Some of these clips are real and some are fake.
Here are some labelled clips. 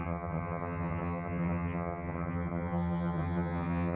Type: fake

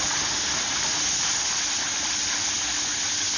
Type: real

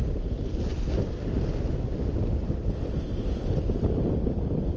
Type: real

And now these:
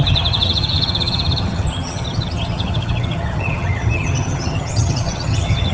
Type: fake